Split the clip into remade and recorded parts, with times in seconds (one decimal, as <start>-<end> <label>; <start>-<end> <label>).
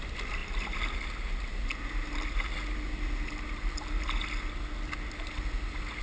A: 0.0-6.0 recorded